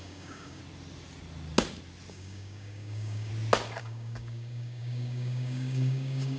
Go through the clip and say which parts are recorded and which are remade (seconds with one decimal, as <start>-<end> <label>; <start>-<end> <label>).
0.0-0.6 remade; 0.6-2.1 recorded; 2.1-3.3 remade; 3.3-3.8 recorded; 3.8-6.4 remade